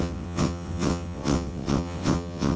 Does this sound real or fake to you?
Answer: fake